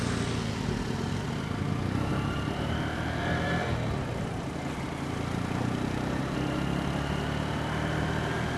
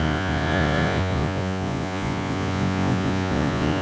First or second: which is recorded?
first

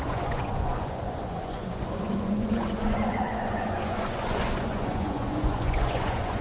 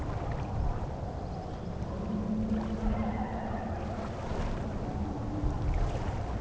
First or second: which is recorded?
second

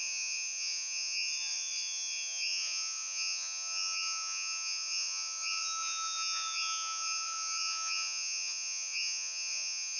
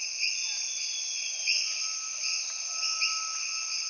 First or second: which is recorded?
second